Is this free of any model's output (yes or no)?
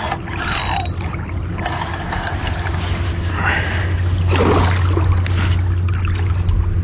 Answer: yes